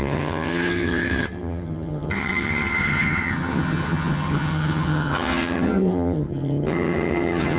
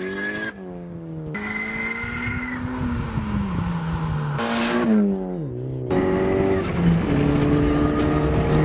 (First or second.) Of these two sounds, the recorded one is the second